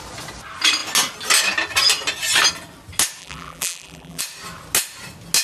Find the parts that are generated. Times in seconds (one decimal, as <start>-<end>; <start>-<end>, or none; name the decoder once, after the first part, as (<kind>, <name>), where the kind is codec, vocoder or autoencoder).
3.2-4.2 (vocoder, BigVGAN v2)